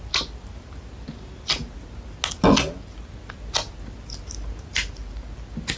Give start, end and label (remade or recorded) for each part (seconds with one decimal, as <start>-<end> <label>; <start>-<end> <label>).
0.0-5.8 recorded